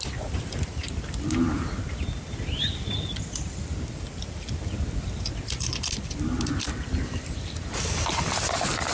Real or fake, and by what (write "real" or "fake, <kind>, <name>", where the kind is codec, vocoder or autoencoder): real